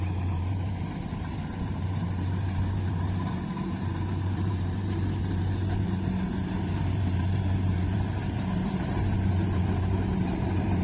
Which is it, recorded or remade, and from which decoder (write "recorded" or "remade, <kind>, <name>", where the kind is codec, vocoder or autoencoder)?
remade, vocoder, BigVGAN v2